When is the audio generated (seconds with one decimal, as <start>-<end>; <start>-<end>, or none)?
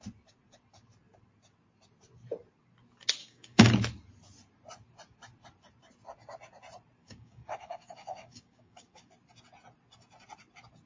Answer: 3.2-3.7; 7.0-9.1